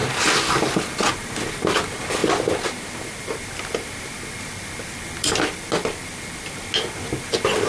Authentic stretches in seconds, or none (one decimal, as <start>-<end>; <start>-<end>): 0.0-7.7